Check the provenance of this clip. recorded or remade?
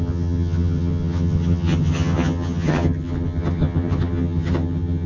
remade